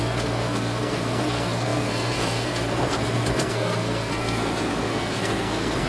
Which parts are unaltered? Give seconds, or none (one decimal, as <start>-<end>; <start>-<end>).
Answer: none